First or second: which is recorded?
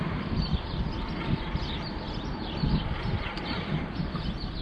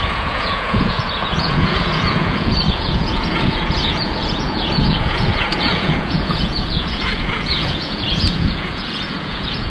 first